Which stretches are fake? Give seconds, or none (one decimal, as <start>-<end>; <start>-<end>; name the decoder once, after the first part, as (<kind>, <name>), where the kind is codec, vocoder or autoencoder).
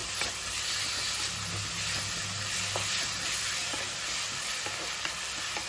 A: none